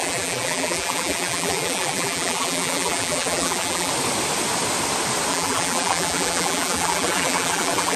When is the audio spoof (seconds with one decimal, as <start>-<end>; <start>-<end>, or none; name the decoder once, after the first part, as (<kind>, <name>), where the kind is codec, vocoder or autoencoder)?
0.0-3.9 (vocoder, BigVGAN v2); 5.3-8.0